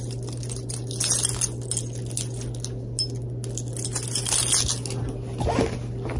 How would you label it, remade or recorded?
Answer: recorded